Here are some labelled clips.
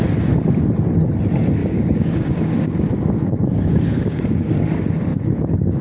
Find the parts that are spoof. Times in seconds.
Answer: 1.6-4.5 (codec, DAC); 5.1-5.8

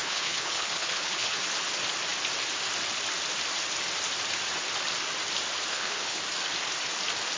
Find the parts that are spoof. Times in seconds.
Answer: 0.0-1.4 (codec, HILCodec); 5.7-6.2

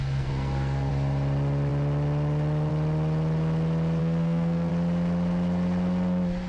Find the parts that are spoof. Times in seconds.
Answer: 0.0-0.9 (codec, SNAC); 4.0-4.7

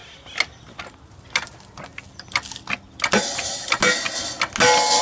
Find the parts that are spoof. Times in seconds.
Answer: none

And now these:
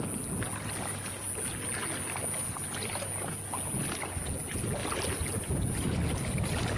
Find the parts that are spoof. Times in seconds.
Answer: none

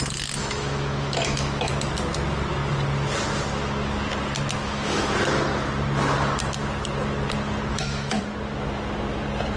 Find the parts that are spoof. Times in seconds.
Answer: 0.4-1.7 (autoencoder, DAC-VAE); 4.6-5.1; 7.7-8.2

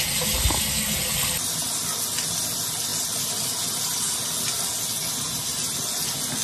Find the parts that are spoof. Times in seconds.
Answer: none